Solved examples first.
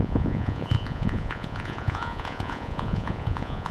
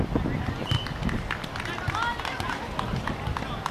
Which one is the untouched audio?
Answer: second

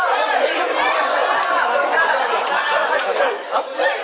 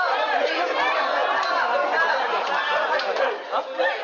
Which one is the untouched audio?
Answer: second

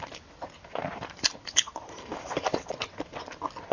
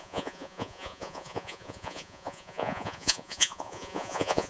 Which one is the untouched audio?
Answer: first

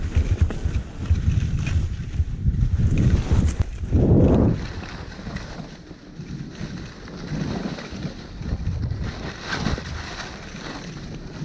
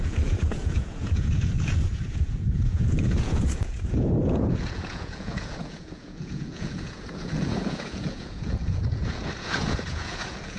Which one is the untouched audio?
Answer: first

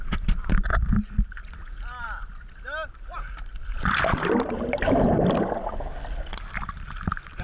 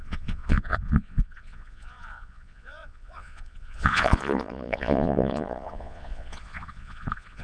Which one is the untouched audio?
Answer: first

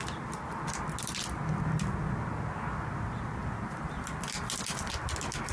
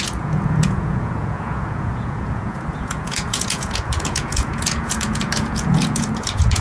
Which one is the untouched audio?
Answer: first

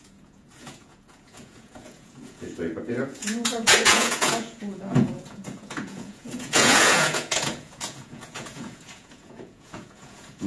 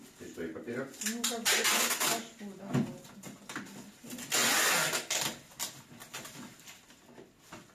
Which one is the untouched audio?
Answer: second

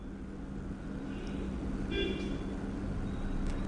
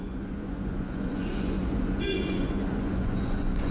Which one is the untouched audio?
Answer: first